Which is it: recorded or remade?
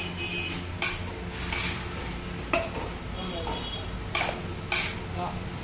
recorded